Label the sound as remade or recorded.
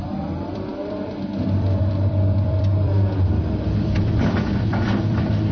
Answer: remade